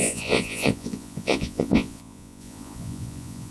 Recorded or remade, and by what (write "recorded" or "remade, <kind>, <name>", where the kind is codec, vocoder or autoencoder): remade, vocoder, Vocos